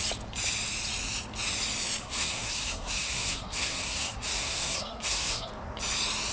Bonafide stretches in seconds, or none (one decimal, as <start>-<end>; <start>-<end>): 0.0-2.0; 5.5-6.3